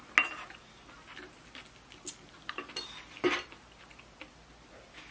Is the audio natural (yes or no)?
yes